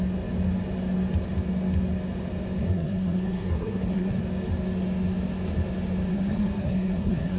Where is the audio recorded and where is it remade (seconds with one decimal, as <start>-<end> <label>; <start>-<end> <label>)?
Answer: 0.0-2.6 recorded; 2.6-4.2 remade; 4.2-6.1 recorded; 6.1-7.4 remade